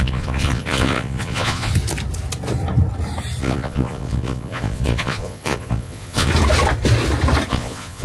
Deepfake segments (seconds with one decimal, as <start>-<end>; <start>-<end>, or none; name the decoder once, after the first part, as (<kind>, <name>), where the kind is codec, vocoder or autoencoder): 0.0-1.7 (vocoder, Vocos); 3.4-6.3; 7.5-8.0